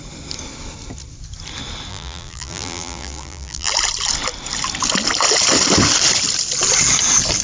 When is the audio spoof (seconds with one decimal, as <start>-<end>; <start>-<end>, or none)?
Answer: 1.9-3.7